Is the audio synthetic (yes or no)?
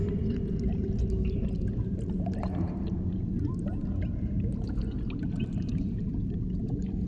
no